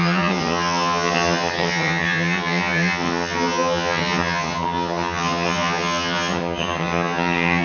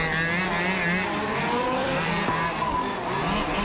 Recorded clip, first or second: second